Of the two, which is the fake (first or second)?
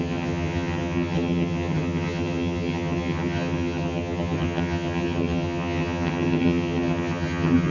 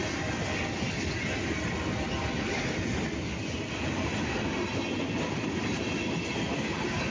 first